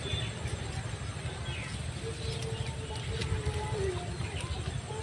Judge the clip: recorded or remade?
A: recorded